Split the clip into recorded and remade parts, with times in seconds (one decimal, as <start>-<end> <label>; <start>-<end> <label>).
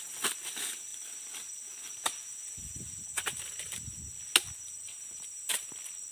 0.0-3.1 recorded; 3.1-3.7 remade; 3.7-4.7 recorded; 4.7-5.5 remade; 5.5-6.1 recorded